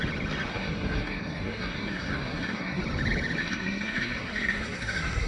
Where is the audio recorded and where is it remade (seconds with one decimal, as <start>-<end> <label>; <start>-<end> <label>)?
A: 0.0-0.5 recorded; 0.5-2.8 remade; 2.8-3.4 recorded; 3.4-5.3 remade